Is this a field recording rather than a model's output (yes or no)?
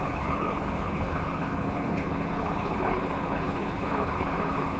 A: no